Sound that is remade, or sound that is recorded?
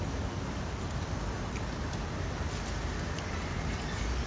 recorded